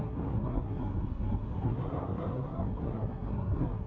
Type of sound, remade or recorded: remade